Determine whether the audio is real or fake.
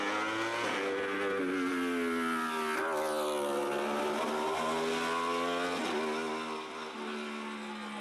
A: real